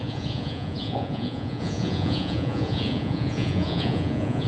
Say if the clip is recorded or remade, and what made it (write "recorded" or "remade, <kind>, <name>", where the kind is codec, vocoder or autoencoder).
remade, vocoder, Vocos